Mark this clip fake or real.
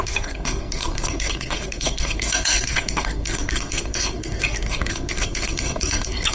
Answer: fake